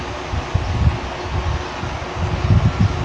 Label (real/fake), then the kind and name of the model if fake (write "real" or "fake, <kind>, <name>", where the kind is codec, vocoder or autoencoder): real